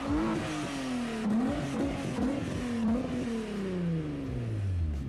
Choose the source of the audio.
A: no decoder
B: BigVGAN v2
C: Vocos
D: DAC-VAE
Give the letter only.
A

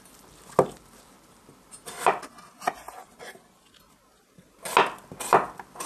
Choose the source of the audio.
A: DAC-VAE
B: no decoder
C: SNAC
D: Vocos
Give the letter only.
B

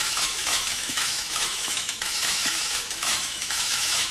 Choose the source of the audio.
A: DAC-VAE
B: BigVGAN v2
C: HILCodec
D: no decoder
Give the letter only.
A